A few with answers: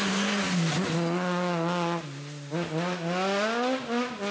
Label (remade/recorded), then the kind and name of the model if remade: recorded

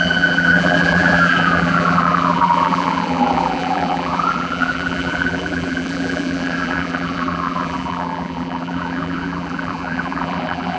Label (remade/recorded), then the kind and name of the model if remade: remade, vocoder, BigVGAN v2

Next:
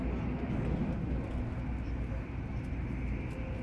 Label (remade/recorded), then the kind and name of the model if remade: recorded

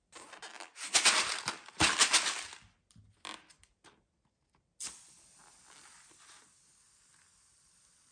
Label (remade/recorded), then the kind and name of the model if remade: recorded